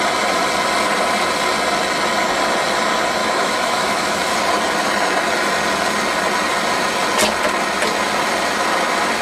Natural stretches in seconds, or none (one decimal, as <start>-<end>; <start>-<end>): 0.0-3.2; 4.2-9.2